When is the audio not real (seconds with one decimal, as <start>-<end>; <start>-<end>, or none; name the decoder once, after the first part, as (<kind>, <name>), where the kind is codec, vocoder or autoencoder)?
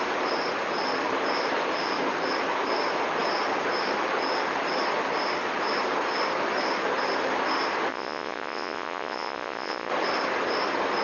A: 7.9-9.9 (vocoder, Vocos)